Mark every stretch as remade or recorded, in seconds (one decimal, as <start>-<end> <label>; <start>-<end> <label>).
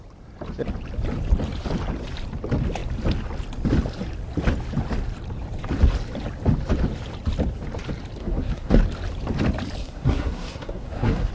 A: 0.0-8.2 recorded; 8.2-8.7 remade; 8.7-9.8 recorded; 9.8-11.3 remade